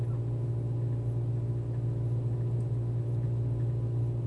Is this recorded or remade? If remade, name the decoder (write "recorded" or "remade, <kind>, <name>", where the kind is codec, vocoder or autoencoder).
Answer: recorded